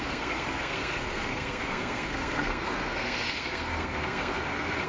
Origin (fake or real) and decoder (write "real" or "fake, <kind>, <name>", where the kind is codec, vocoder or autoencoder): fake, codec, SNAC